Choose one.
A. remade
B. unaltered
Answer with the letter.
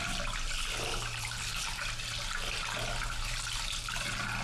B